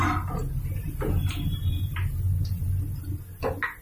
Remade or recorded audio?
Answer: recorded